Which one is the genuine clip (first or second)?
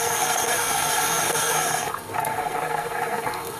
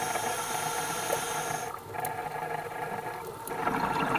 second